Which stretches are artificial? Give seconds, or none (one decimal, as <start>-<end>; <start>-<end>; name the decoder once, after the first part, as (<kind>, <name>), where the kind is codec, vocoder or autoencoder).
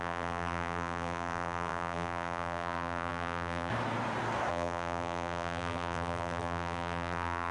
0.0-3.7 (vocoder, BigVGAN v2); 4.5-7.5